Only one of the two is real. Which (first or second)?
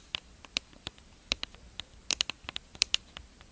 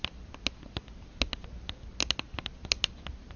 second